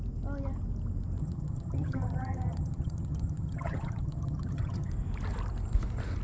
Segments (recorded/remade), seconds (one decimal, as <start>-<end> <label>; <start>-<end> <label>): 0.0-1.2 recorded; 1.2-4.9 remade; 4.9-6.2 recorded